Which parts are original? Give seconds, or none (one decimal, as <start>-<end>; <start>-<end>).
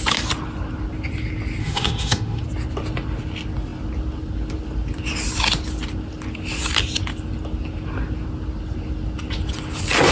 0.0-1.6; 2.4-10.1